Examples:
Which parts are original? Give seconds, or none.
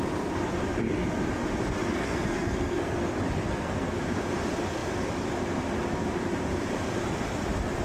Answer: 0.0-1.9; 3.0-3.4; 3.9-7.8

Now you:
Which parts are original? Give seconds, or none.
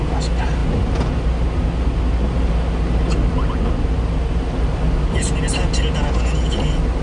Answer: 0.0-7.0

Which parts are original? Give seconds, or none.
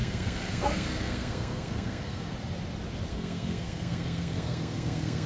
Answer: 2.3-3.1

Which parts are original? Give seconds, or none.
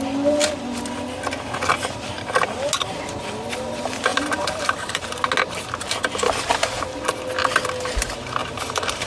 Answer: 0.0-4.1; 5.2-8.4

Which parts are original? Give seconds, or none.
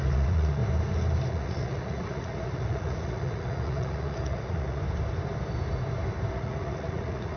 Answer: 0.6-1.3; 4.8-6.3